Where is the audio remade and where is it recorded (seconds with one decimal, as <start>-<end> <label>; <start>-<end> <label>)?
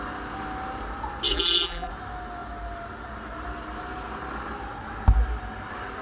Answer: 0.0-1.3 recorded; 1.3-1.9 remade; 1.9-6.0 recorded